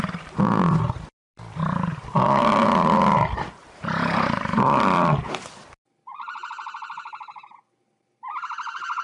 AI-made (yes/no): yes